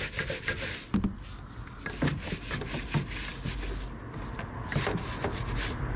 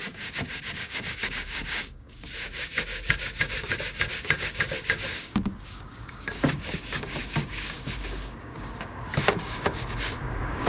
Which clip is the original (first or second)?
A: first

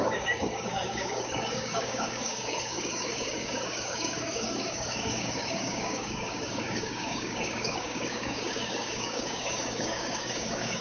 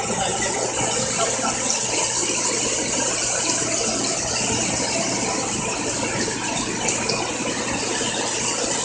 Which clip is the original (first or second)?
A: second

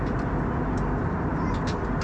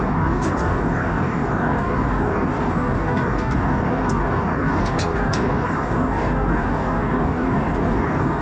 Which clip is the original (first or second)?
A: first